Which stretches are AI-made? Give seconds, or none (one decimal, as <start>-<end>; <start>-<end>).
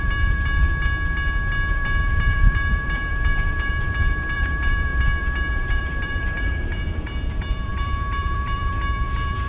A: 0.0-0.7; 1.7-9.5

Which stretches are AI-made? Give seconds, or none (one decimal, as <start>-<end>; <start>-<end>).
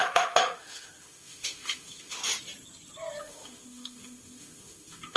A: 0.0-2.2; 3.2-5.2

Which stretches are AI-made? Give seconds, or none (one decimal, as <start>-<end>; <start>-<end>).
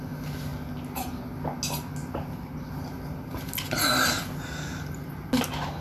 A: none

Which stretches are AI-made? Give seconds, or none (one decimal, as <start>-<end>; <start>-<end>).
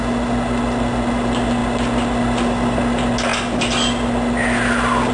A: 1.6-2.8; 3.3-5.1